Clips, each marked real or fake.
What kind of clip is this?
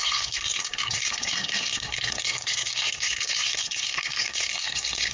fake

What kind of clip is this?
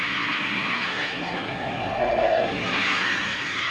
fake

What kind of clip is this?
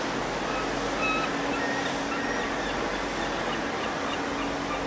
real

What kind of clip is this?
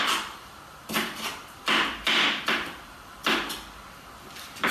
fake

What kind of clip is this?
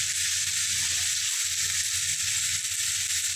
real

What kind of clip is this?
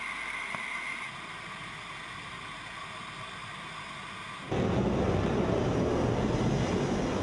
real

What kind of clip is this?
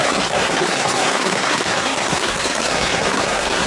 fake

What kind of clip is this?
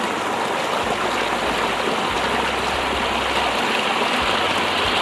real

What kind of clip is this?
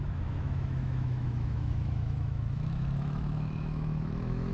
fake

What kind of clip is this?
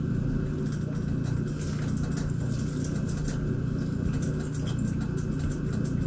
real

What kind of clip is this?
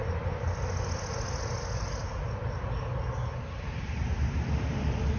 real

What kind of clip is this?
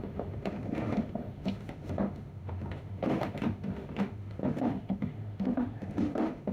fake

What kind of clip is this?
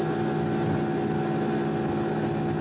real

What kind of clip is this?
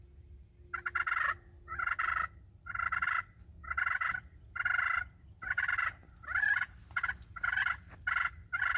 real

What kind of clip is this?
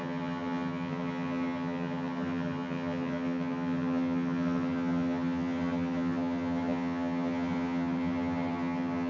fake